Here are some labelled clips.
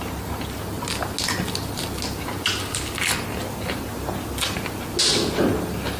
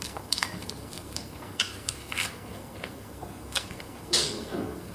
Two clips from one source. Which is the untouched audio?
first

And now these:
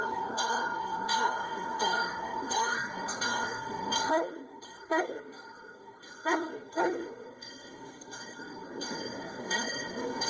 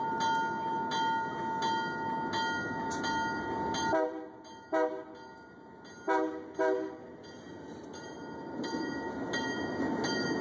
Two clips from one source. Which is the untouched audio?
second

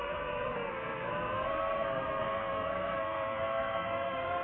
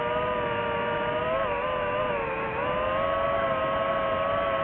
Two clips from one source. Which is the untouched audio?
second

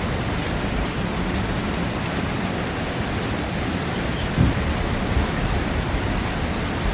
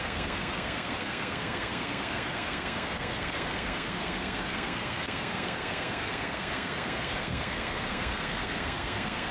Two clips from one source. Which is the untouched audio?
first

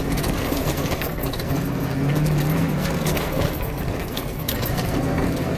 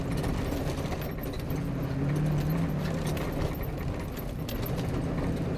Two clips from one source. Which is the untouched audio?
second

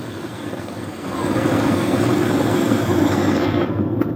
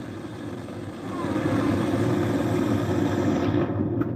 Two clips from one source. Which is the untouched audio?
second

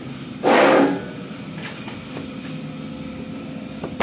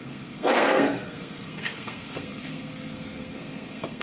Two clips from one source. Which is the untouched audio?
first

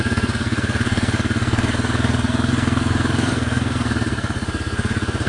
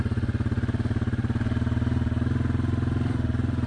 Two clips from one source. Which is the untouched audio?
second